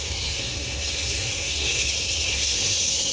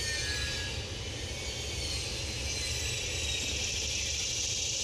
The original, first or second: second